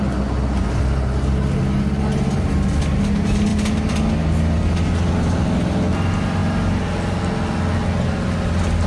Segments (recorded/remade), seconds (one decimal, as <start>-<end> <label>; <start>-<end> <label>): 0.0-8.9 recorded